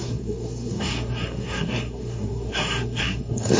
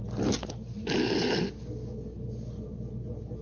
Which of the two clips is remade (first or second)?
first